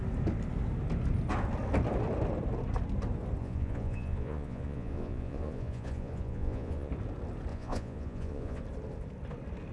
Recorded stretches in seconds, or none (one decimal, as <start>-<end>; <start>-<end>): 0.0-3.4; 6.9-7.5; 8.6-9.7